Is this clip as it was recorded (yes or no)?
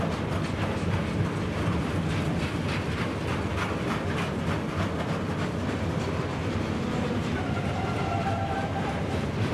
yes